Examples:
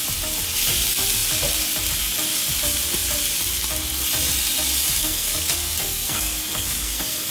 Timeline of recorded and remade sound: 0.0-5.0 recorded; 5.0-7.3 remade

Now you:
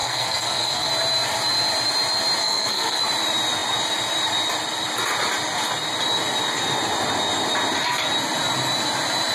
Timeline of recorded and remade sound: 0.0-0.9 remade; 0.9-2.4 recorded; 2.4-3.0 remade; 3.0-9.3 recorded

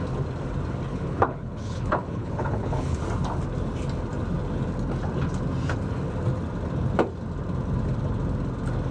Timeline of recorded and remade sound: 0.0-0.9 recorded; 0.9-3.0 remade; 3.0-8.9 recorded

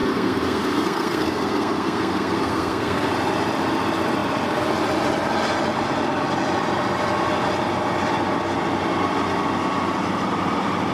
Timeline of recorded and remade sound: 0.0-3.1 remade; 3.1-10.9 recorded